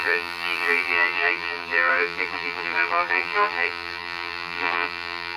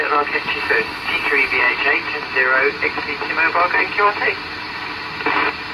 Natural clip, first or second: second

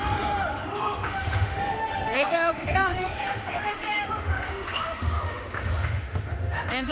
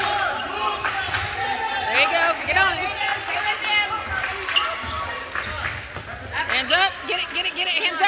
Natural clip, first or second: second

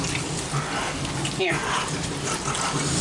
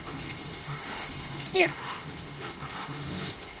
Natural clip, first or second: first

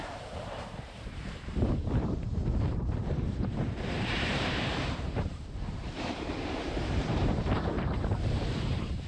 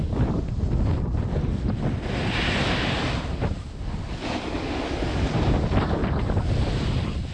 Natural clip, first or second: second